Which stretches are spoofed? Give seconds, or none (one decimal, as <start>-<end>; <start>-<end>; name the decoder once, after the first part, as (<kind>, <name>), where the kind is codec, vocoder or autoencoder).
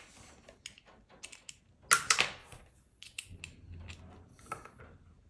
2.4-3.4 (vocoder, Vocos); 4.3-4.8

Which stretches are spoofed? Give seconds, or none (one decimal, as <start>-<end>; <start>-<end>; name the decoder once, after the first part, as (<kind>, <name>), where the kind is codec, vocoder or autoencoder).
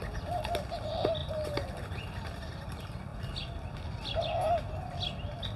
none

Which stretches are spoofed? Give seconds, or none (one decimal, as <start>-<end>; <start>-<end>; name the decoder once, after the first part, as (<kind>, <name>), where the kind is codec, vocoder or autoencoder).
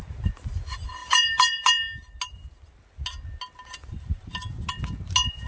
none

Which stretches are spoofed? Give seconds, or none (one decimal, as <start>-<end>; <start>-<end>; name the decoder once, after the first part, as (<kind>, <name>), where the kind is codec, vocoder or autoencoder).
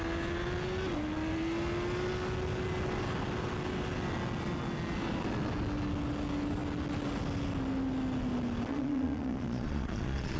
8.7-10.4 (vocoder, Vocos)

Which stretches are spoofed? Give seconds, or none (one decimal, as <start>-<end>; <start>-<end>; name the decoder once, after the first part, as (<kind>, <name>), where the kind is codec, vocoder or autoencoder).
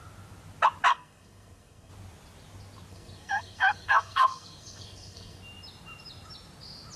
0.9-1.9 (codec, SNAC); 2.9-5.4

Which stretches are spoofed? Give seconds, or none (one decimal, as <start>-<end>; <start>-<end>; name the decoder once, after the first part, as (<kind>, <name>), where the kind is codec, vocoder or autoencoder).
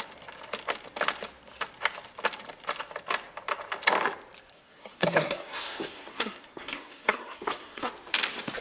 4.5-7.9 (codec, SNAC)